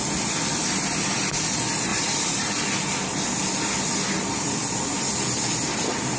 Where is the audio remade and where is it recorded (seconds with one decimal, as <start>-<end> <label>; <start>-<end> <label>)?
0.0-1.9 recorded; 1.9-2.5 remade; 2.5-6.2 recorded